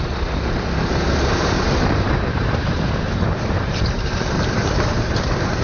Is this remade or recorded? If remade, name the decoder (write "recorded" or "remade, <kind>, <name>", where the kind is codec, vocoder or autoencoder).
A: remade, vocoder, BigVGAN v2